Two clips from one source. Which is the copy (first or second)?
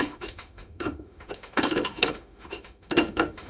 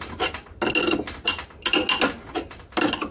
first